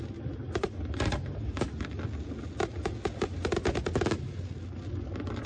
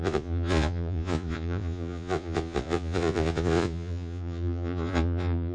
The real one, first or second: first